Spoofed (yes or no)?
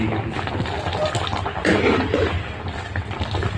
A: no